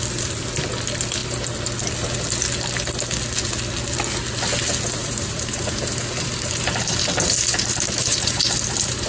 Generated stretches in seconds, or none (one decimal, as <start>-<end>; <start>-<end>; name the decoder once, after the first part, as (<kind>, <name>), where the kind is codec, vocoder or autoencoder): 5.0-9.1 (vocoder, BigVGAN v2)